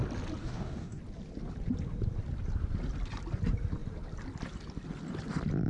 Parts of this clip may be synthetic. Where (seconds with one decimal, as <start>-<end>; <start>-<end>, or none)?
0.4-1.0